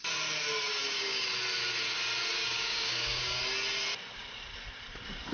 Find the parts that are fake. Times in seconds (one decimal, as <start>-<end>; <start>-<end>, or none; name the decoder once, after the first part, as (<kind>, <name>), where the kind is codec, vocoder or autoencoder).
0.8-1.3 (codec, DAC); 2.4-3.4